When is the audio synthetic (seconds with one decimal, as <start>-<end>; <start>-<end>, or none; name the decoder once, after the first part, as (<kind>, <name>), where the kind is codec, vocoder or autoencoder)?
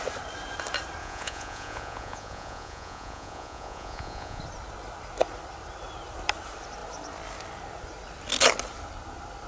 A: 1.0-4.4 (vocoder, Vocos)